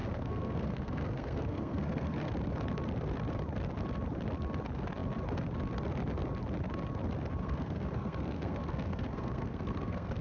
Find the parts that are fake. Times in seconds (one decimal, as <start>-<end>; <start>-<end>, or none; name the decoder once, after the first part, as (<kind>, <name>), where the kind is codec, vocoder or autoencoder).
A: 0.0-2.3 (codec, SNAC); 7.4-10.2